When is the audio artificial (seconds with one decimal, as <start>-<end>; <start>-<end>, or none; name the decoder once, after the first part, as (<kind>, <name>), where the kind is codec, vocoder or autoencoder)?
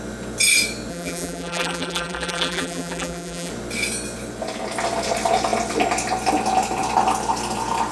0.9-3.5 (vocoder, BigVGAN v2)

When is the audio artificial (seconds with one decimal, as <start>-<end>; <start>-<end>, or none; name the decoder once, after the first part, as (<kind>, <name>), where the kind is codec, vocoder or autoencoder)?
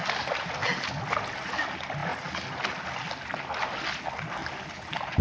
none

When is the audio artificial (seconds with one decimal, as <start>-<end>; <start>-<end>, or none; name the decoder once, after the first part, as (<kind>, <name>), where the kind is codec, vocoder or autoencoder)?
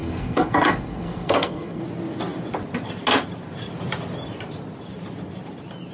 0.0-1.8 (codec, SNAC)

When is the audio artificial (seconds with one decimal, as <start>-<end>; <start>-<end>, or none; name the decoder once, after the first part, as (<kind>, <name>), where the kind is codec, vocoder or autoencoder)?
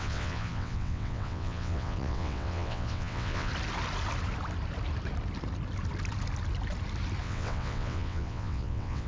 0.0-3.5 (vocoder, WaveNeXt); 7.2-9.1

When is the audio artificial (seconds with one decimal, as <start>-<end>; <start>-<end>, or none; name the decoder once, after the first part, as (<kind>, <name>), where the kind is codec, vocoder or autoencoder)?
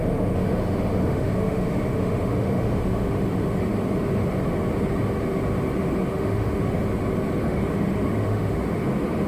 0.0-3.7 (autoencoder, DAC-VAE); 6.1-6.8; 7.4-9.3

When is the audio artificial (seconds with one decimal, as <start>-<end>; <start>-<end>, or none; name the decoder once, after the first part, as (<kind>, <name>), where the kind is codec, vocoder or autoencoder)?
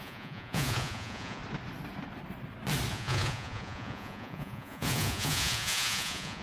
0.0-1.4 (vocoder, Vocos); 2.9-6.4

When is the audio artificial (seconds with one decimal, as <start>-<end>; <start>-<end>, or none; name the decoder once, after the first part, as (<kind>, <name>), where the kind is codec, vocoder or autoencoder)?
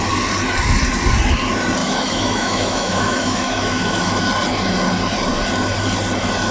1.8-4.2 (autoencoder, DAC-VAE)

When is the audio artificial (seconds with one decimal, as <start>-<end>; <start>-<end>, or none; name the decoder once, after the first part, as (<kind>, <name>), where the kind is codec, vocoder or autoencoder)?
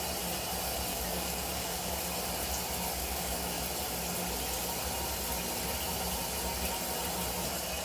0.9-2.0 (codec, DAC); 3.0-3.6